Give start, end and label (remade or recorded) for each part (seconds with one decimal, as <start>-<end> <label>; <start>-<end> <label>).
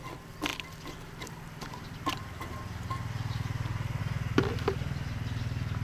0.0-5.8 recorded